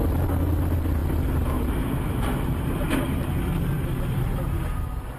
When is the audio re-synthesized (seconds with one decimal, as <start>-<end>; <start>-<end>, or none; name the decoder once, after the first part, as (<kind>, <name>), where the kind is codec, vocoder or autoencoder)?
none